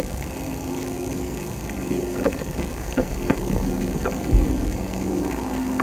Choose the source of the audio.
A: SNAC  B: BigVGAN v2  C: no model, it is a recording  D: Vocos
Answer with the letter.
A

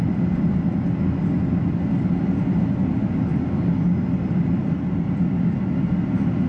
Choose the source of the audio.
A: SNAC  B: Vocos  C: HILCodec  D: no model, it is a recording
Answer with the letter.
D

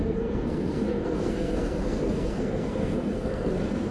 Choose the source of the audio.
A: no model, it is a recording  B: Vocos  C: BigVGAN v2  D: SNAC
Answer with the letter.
D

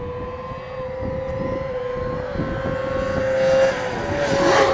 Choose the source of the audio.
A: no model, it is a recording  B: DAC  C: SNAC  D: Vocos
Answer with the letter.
A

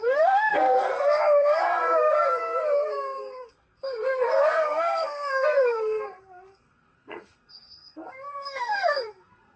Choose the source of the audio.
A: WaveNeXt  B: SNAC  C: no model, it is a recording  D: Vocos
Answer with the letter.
B